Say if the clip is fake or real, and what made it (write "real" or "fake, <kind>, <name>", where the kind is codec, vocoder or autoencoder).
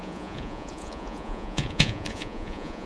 fake, vocoder, Vocos